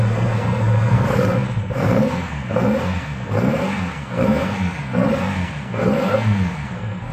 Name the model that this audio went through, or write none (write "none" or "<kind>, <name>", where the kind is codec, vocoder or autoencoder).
codec, SNAC